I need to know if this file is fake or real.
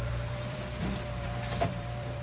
fake